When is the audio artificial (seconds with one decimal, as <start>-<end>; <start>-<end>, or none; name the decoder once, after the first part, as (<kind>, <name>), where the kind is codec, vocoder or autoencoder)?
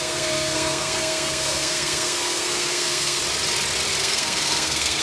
0.0-3.2 (codec, SNAC); 4.0-5.0